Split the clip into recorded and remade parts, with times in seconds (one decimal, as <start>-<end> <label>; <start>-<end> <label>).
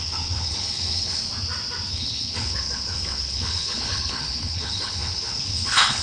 0.0-1.2 remade; 1.2-1.9 recorded; 1.9-6.0 remade